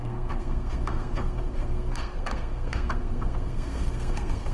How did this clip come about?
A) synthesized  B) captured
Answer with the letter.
A